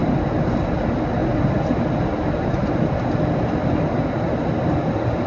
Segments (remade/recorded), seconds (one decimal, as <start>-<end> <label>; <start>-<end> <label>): 0.0-5.3 recorded